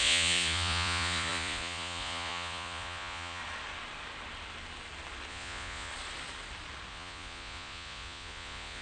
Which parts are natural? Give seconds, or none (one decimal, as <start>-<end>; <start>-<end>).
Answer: 3.4-5.3; 5.9-6.9